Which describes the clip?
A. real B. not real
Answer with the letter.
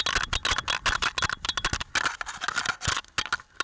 A